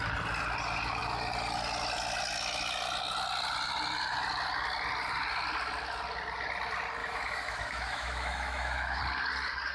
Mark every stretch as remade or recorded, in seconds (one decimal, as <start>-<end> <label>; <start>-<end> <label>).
0.0-7.0 recorded; 7.0-9.0 remade; 9.0-9.7 recorded